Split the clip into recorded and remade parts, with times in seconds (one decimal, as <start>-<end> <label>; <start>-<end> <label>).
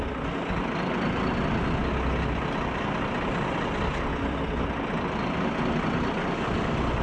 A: 0.0-7.0 recorded